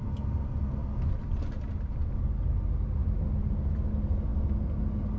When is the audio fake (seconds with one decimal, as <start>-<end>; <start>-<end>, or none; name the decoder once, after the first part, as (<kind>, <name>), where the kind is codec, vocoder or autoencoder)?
none